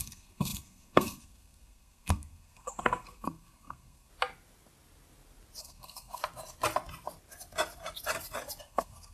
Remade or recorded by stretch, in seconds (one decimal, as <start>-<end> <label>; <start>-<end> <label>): 0.0-4.1 remade; 4.1-5.6 recorded; 5.6-6.2 remade; 6.2-8.6 recorded; 8.6-9.1 remade